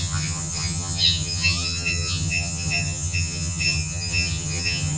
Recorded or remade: remade